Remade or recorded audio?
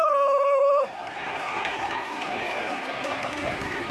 remade